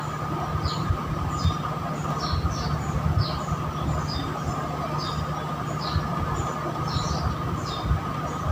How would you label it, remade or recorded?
recorded